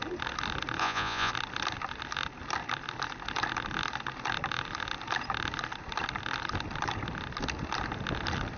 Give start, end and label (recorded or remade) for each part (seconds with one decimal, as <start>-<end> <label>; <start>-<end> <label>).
0.0-0.8 recorded; 0.8-1.3 remade; 1.3-8.6 recorded